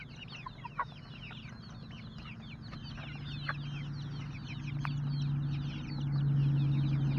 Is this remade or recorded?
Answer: recorded